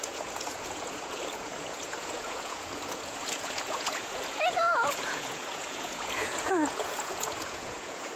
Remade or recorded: remade